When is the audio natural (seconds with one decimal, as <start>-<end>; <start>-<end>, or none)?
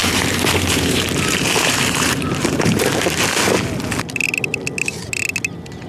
3.2-5.9